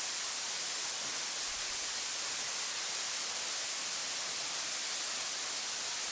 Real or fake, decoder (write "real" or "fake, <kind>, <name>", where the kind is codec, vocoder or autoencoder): real